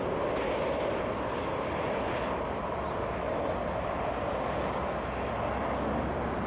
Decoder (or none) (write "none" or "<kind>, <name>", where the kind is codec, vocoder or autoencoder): none